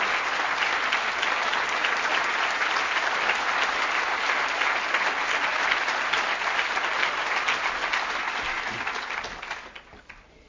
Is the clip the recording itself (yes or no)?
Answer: yes